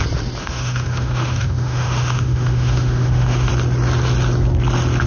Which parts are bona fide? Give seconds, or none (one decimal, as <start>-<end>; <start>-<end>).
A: 0.0-0.4; 3.5-5.1